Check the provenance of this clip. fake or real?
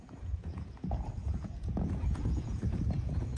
fake